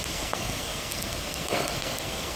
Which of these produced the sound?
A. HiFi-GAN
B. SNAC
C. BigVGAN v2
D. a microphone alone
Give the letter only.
B